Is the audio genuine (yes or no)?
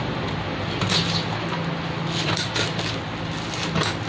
yes